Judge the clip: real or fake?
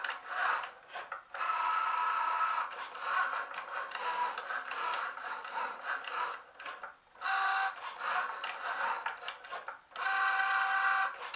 real